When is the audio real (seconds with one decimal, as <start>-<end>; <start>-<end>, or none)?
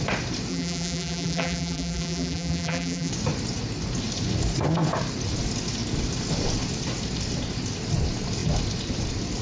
0.0-0.5; 3.1-9.4